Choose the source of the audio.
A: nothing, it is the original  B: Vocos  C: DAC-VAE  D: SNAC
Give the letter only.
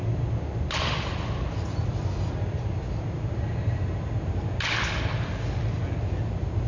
A